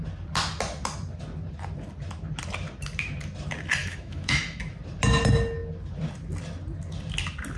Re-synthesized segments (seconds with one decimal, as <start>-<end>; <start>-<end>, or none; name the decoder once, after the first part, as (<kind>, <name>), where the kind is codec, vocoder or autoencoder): 3.8-4.6 (autoencoder, DAC-VAE)